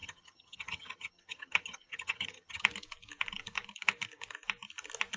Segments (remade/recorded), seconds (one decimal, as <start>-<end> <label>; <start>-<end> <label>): 0.0-2.6 remade; 2.6-5.2 recorded